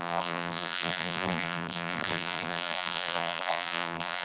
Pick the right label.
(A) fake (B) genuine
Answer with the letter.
A